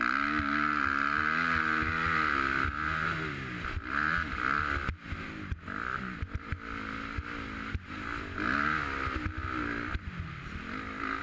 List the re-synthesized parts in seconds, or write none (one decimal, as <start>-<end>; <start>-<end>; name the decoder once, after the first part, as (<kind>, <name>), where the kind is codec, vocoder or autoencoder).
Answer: none